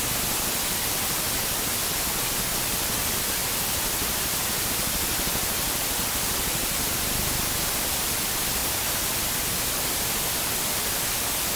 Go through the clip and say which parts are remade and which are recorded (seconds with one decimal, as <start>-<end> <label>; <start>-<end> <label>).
0.0-11.6 recorded